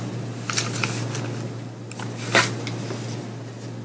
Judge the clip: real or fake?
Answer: real